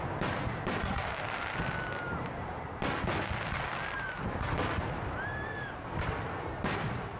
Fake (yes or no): no